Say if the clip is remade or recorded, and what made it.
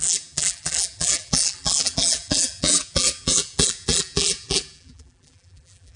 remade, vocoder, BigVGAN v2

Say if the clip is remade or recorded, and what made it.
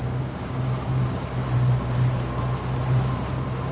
recorded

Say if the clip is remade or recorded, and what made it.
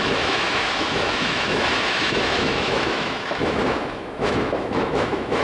remade, autoencoder, DAC-VAE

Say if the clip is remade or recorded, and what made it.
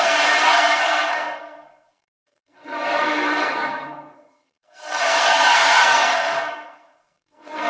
remade, codec, SNAC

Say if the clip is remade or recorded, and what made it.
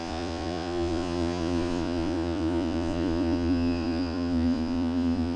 remade, vocoder, Vocos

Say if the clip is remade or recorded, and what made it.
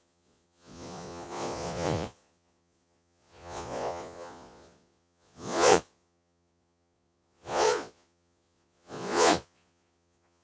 remade, vocoder, Vocos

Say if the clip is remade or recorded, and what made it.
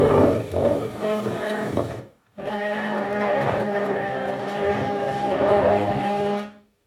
remade, codec, DAC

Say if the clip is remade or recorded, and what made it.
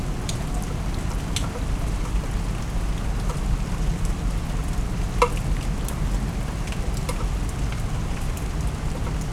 recorded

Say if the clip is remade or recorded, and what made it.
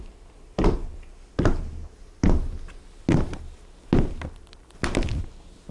recorded